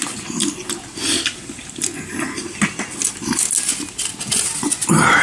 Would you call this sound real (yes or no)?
yes